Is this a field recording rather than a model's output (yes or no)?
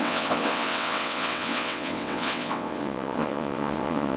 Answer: no